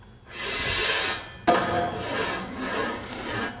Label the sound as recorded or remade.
recorded